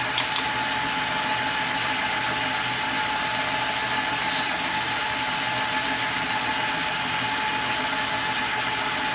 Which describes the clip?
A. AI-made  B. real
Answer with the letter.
B